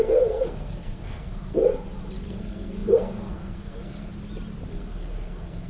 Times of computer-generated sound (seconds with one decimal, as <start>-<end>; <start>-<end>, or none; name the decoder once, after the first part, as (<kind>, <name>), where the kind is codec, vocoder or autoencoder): 0.0-1.6 (codec, SNAC); 2.3-4.1; 4.7-5.7